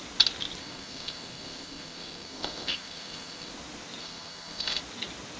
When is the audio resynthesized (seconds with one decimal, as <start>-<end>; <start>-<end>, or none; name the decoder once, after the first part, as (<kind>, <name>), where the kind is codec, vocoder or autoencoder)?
0.6-3.5 (codec, SNAC); 4.0-4.8